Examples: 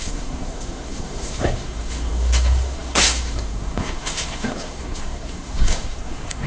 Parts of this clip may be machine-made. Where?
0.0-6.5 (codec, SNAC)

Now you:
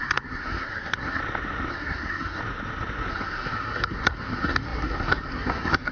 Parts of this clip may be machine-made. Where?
0.0-1.2 (codec, SNAC); 1.7-2.4; 3.1-5.9

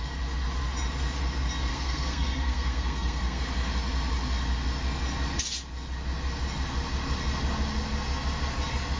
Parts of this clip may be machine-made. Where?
1.7-3.4 (codec, SNAC)

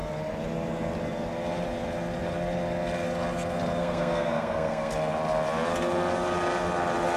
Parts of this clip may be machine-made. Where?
3.8-4.9 (codec, SNAC)

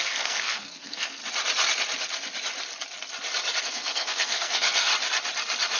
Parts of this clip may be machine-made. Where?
0.0-1.2 (codec, SNAC); 3.6-4.9

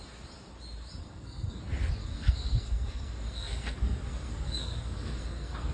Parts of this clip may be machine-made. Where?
1.0-1.6 (codec, SNAC); 2.0-5.7

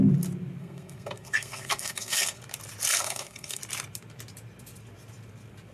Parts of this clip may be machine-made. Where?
0.6-2.4 (codec, SNAC); 2.9-3.6